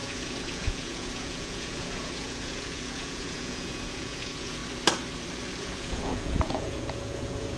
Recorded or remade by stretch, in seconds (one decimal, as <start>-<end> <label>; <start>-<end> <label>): 0.0-4.6 remade; 4.6-5.6 recorded; 5.6-7.6 remade